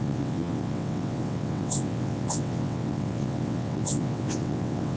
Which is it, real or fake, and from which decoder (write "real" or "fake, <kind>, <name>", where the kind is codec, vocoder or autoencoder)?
fake, vocoder, WaveNeXt